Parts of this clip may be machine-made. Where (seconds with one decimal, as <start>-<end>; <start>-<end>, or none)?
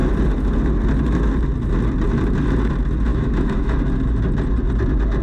3.1-3.8